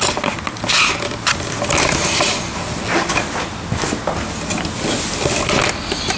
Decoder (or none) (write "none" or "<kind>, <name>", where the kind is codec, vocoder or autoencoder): none